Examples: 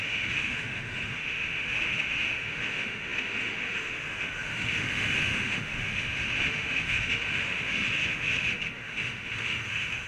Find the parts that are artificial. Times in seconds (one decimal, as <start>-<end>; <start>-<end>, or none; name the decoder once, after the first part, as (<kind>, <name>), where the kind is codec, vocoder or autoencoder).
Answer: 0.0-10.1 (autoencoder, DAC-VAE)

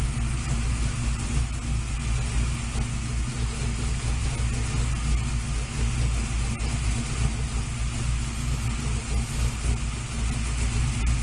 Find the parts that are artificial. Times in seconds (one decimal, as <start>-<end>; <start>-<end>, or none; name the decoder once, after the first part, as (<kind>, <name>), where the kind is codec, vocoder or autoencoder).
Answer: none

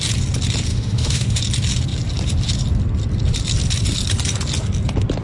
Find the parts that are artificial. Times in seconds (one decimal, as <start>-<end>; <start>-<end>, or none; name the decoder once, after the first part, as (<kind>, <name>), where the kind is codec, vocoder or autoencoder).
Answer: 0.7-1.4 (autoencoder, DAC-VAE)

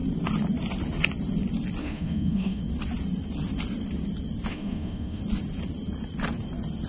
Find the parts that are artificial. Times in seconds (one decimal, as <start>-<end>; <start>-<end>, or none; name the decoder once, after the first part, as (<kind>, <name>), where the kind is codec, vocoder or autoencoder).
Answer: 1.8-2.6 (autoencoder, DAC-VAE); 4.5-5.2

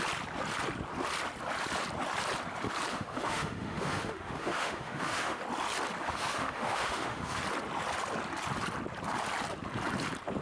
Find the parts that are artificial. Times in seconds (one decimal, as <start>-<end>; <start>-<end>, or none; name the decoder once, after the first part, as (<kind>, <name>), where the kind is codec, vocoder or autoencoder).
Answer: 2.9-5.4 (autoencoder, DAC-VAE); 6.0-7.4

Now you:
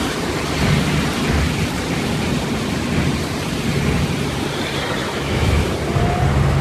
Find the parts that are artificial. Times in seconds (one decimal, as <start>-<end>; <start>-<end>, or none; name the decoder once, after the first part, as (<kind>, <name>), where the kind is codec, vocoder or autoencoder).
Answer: 5.0-5.6 (autoencoder, DAC-VAE)

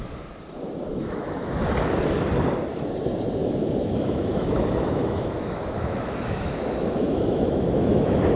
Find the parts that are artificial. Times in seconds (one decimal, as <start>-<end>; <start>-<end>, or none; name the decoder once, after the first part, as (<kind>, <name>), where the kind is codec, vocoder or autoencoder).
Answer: 0.9-1.5 (autoencoder, DAC-VAE); 3.4-8.4